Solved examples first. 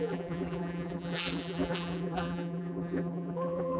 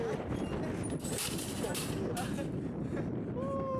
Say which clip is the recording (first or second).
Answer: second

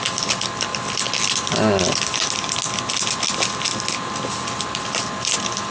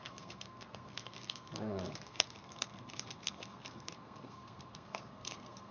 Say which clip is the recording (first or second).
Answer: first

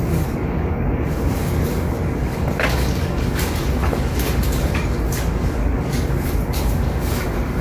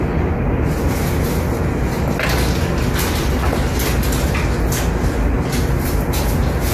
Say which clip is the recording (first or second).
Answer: second